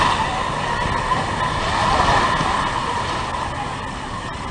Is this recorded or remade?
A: recorded